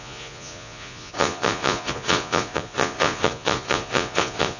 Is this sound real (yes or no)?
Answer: no